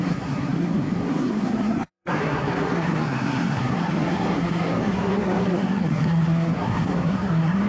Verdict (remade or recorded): remade